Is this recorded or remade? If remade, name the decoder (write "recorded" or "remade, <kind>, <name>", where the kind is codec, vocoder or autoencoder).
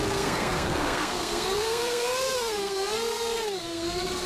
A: remade, codec, SNAC